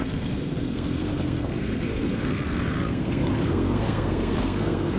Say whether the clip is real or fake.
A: fake